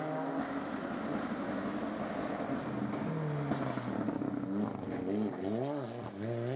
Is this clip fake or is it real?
real